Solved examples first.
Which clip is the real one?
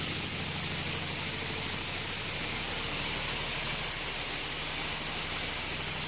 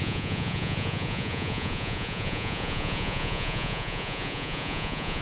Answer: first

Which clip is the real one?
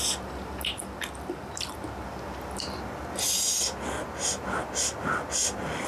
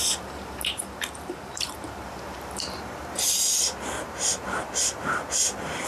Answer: first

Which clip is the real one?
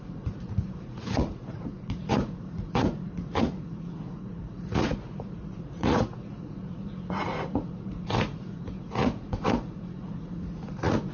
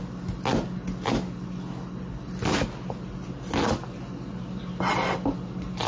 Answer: second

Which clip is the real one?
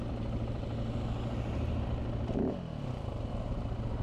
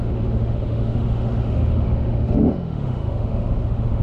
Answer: first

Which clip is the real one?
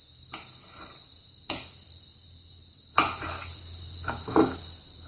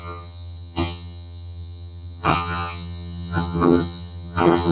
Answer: first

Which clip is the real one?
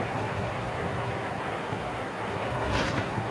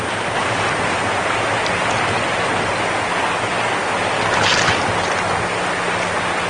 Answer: second